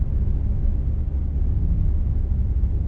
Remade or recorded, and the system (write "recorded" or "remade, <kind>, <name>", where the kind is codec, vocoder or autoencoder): recorded